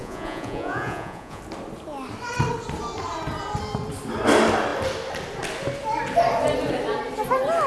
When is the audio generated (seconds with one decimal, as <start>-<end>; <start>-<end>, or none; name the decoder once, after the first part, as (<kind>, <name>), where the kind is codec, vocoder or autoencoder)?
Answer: 0.0-1.4 (vocoder, Vocos)